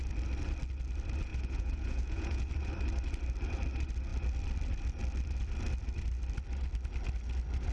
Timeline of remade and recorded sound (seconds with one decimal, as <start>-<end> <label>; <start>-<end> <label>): 0.0-1.3 recorded; 1.3-2.5 remade; 2.5-7.7 recorded